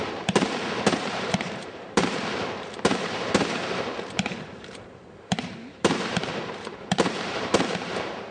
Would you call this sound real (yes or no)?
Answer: no